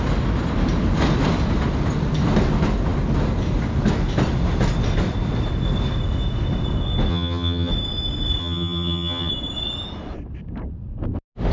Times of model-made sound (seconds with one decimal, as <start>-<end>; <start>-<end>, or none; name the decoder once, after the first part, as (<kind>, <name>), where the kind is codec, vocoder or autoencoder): 7.1-7.7 (vocoder, HiFi-GAN); 8.4-9.3